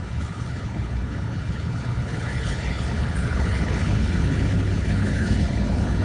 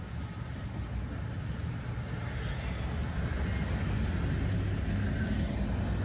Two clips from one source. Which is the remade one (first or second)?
first